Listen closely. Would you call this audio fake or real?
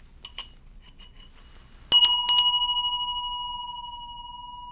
real